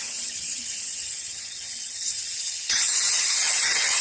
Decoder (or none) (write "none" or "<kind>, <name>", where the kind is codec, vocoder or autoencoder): vocoder, HiFi-GAN